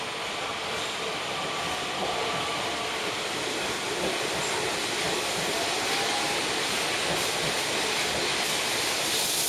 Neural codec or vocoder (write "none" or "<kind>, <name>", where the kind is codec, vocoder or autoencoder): vocoder, BigVGAN v2